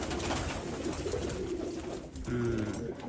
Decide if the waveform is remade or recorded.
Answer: recorded